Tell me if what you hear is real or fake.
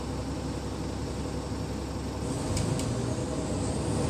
real